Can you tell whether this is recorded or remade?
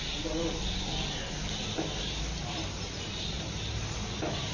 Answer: recorded